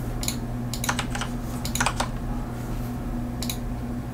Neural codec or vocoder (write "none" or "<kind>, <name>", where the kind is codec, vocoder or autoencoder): none